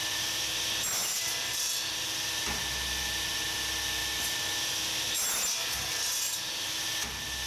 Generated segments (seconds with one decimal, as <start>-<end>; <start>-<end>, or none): 1.0-2.0; 4.0-5.1